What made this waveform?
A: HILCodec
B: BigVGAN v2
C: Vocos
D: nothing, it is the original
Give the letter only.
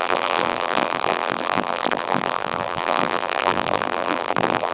B